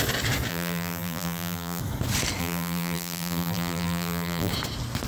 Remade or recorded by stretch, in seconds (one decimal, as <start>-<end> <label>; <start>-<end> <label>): 0.0-0.5 recorded; 0.5-1.8 remade; 1.8-2.4 recorded; 2.4-4.5 remade; 4.5-5.1 recorded